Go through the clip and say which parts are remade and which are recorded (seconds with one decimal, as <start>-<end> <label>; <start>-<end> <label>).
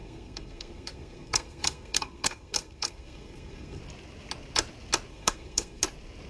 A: 0.0-3.8 remade; 3.8-5.1 recorded; 5.1-5.8 remade; 5.8-6.3 recorded